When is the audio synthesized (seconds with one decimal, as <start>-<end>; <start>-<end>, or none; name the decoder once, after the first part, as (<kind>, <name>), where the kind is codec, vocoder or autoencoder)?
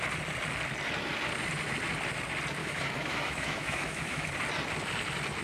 2.6-4.3 (autoencoder, DAC-VAE)